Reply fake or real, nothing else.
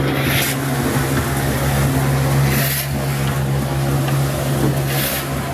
real